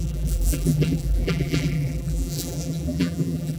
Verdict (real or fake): fake